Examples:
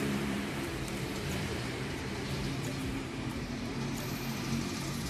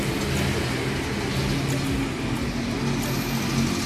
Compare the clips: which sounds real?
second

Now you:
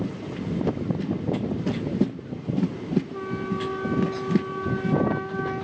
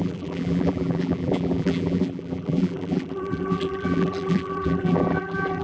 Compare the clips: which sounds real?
first